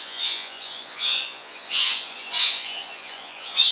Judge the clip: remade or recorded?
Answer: remade